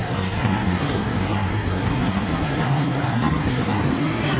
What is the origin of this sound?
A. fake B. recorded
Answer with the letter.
A